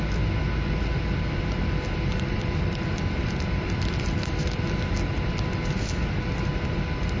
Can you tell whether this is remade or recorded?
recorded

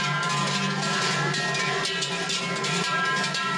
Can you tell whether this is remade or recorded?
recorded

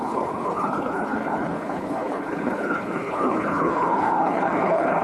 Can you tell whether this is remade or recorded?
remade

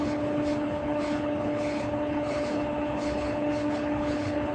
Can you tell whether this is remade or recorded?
remade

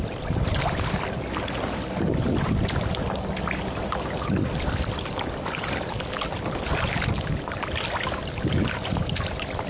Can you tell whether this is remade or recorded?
recorded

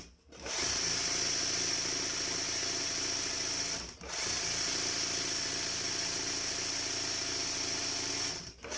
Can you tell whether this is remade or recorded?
recorded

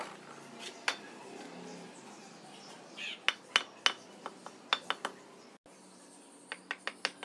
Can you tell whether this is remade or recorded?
recorded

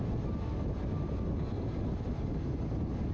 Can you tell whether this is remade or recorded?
recorded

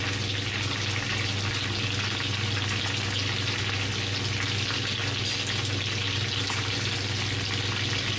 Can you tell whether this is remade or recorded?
recorded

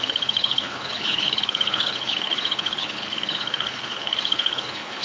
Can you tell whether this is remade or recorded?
remade